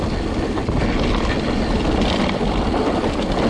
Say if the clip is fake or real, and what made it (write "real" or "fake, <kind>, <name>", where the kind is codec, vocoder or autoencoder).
real